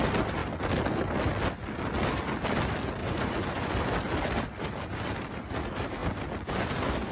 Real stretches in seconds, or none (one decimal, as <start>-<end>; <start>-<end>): 0.0-3.0; 3.7-7.1